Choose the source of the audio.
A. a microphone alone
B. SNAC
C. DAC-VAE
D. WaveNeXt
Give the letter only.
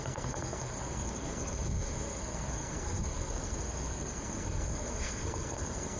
B